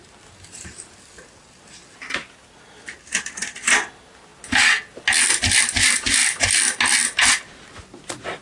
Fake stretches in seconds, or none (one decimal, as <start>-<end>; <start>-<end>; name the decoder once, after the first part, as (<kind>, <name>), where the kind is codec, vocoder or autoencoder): none